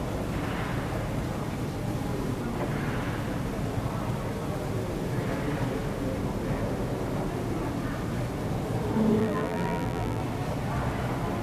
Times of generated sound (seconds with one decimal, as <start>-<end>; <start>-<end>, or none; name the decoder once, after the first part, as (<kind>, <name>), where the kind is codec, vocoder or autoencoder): 9.2-10.2 (vocoder, BigVGAN v2)